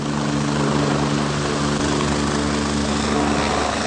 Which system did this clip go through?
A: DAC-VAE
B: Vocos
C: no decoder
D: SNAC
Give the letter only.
C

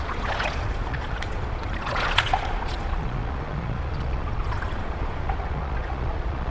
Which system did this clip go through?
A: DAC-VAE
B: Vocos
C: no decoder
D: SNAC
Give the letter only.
B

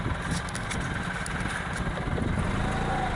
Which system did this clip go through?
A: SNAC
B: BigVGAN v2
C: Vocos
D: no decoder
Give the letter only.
D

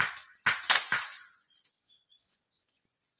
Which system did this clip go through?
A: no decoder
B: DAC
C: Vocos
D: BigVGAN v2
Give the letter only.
C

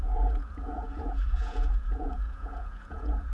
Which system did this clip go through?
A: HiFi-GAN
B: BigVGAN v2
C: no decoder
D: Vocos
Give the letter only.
D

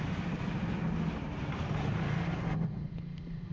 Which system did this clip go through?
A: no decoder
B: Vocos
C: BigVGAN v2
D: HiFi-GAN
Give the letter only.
A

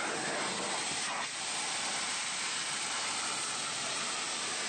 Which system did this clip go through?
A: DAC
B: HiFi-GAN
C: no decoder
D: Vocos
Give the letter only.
C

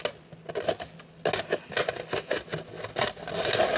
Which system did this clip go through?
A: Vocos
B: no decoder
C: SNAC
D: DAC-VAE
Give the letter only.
B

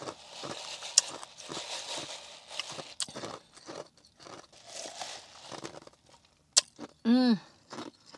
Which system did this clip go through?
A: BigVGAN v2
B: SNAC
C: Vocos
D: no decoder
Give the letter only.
D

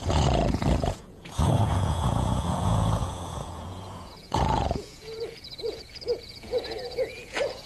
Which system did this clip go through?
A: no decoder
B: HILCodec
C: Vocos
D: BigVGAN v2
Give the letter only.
C